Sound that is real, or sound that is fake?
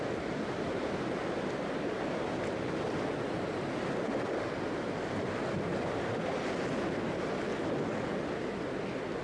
real